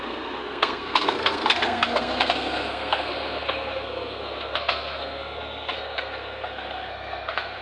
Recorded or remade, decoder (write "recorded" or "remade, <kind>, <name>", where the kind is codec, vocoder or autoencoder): remade, codec, SNAC